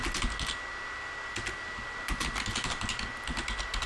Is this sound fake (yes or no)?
no